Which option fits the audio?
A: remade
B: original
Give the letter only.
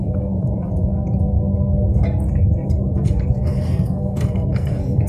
A